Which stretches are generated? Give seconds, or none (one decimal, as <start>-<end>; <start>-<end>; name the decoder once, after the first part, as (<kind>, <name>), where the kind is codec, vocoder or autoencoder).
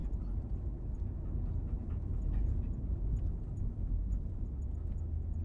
none